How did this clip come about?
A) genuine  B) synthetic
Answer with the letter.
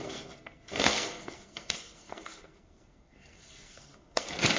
B